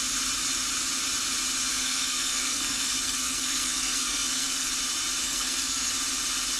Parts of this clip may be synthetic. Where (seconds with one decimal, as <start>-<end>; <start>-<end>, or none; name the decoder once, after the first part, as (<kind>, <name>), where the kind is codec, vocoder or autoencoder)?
1.7-4.7 (codec, SNAC); 5.2-5.9